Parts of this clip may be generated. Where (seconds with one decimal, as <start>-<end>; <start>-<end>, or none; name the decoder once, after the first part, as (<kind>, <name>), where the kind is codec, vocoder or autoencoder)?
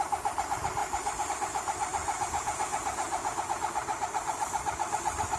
2.0-3.4 (vocoder, Vocos)